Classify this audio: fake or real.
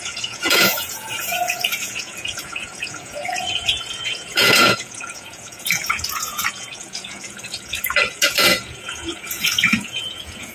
fake